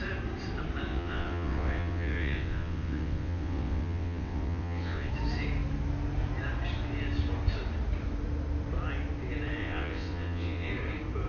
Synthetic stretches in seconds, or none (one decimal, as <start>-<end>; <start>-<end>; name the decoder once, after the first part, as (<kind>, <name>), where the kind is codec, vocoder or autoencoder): 0.9-5.1 (vocoder, WaveNeXt); 9.6-10.7